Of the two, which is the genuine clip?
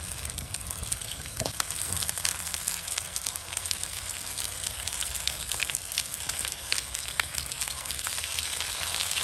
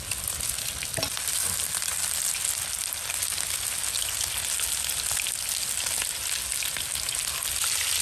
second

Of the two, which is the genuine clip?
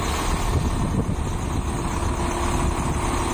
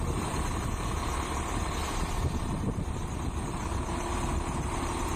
first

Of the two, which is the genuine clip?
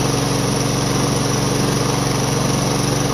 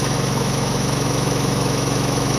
first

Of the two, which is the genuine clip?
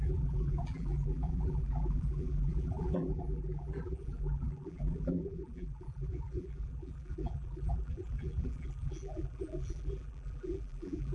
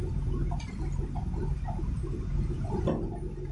second